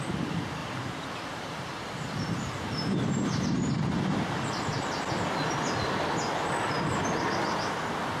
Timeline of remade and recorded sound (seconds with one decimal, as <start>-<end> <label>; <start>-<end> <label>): 0.0-0.6 recorded; 0.6-5.1 remade; 5.1-8.2 recorded